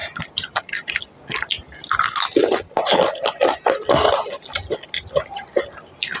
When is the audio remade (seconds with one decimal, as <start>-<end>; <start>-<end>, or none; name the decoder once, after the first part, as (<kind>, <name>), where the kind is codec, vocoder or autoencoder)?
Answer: none